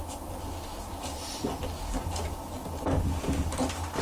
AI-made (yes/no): no